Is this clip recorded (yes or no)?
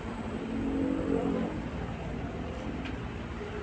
yes